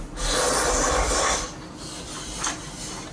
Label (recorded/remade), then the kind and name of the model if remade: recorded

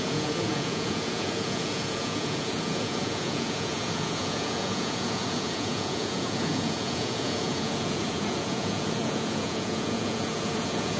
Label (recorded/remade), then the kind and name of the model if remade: remade, vocoder, Vocos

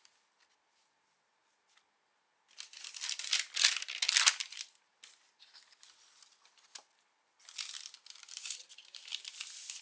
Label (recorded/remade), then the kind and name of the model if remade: recorded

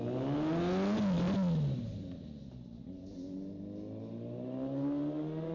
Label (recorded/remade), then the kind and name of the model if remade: recorded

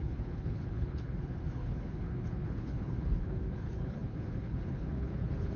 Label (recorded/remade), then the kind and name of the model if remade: remade, codec, HILCodec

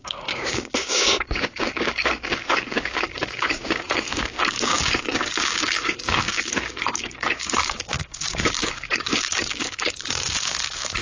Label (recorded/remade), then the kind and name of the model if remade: remade, codec, DAC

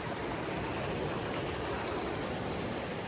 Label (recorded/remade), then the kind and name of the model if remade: remade, vocoder, BigVGAN v2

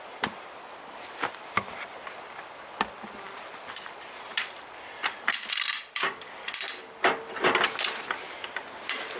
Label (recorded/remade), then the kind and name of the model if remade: recorded